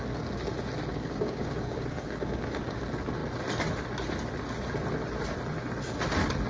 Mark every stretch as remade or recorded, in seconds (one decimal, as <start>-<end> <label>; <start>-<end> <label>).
0.0-0.9 recorded; 0.9-2.8 remade; 2.8-6.5 recorded